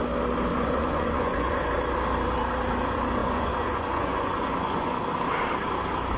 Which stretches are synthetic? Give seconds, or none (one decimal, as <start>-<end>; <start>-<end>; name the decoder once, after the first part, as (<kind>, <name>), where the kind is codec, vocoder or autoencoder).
0.5-1.7 (vocoder, Vocos); 3.2-5.0